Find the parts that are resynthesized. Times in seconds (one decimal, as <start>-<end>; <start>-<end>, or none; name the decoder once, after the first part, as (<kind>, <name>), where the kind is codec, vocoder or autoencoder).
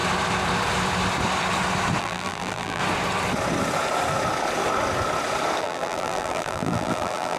2.0-2.8 (vocoder, BigVGAN v2); 5.6-7.4